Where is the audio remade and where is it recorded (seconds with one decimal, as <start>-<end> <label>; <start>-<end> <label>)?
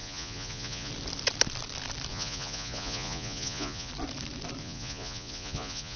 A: 0.0-0.9 remade; 0.9-2.1 recorded; 2.1-3.9 remade; 3.9-4.6 recorded; 4.6-6.0 remade